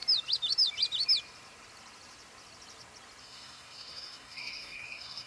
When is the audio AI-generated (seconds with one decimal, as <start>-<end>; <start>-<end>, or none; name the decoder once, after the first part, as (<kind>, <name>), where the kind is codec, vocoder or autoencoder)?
3.2-5.3 (codec, SNAC)